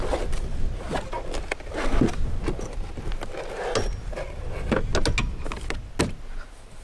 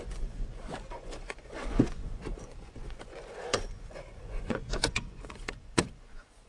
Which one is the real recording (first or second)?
first